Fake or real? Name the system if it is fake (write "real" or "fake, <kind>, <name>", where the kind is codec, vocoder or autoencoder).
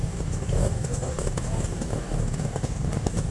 fake, codec, DAC